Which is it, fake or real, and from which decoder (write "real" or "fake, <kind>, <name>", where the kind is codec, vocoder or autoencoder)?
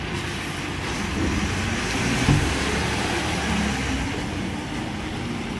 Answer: real